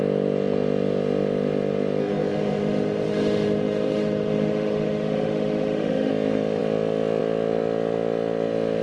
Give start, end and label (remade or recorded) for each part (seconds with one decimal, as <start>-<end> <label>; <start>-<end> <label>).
0.0-2.0 recorded; 2.0-6.1 remade; 6.1-8.8 recorded